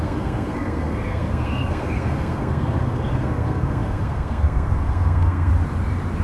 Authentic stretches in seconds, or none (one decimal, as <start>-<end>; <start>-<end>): 5.5-6.2